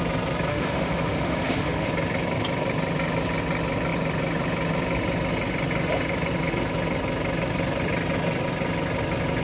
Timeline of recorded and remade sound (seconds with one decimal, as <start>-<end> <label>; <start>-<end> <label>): 0.0-0.5 recorded; 0.5-1.9 remade; 1.9-9.4 recorded